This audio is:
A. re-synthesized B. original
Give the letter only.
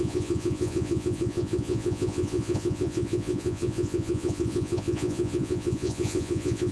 A